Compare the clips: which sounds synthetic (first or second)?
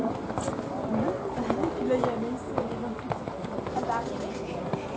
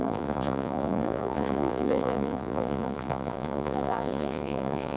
second